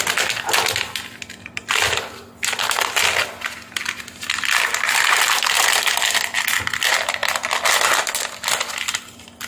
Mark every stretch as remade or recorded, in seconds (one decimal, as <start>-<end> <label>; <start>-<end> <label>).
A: 0.0-9.5 recorded